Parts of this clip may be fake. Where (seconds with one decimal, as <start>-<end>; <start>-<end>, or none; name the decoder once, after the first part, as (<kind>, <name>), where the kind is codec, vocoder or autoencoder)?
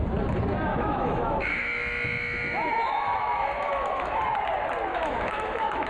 0.7-4.2 (autoencoder, DAC-VAE); 4.9-5.9